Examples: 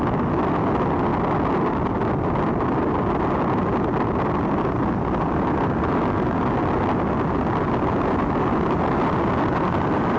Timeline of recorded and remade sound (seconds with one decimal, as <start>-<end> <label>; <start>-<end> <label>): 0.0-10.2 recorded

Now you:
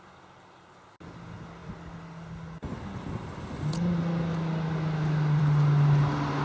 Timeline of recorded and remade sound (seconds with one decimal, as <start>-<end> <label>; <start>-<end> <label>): 0.0-6.4 recorded

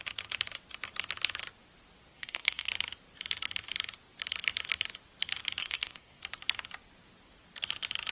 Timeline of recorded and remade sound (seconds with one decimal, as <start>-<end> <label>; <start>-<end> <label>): 0.0-2.1 recorded; 2.1-2.7 remade; 2.7-5.6 recorded; 5.6-6.2 remade; 6.2-8.1 recorded